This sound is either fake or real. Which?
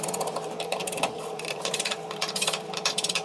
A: fake